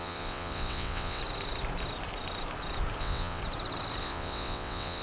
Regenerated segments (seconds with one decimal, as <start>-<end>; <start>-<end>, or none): 0.0-1.2; 3.0-3.4; 4.0-5.0